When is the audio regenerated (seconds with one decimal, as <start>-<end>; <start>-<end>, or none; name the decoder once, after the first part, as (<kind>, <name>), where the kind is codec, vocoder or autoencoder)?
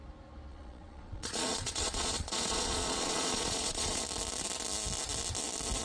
0.5-4.0 (vocoder, Vocos)